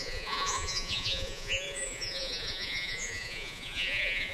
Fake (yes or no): yes